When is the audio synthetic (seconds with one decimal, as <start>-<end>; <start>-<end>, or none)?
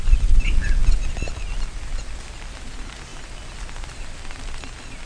none